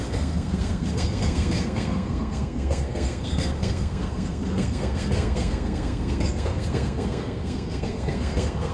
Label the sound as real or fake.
fake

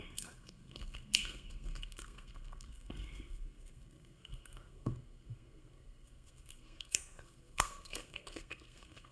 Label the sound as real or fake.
fake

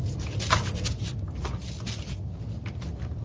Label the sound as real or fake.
real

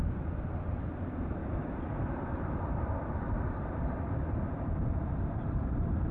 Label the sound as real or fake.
fake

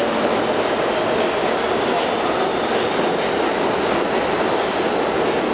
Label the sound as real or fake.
real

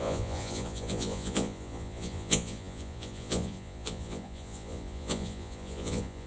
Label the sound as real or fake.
fake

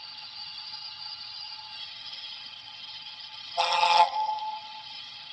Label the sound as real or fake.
fake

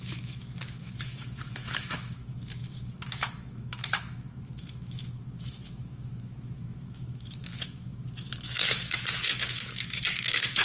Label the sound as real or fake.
fake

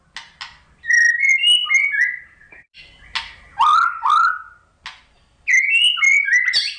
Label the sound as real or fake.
real